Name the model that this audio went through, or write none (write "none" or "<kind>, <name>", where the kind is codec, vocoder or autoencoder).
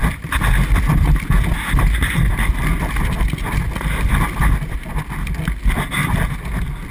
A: none